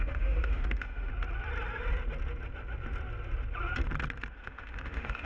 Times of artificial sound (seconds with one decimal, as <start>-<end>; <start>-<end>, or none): 0.0-1.1; 4.3-5.3